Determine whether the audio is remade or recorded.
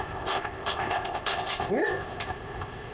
remade